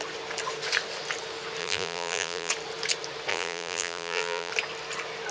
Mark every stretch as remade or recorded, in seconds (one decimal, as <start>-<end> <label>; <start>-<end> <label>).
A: 0.0-1.6 recorded; 1.6-2.5 remade; 2.5-3.3 recorded; 3.3-4.5 remade; 4.5-5.3 recorded